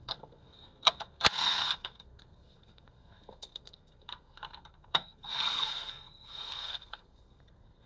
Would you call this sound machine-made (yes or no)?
yes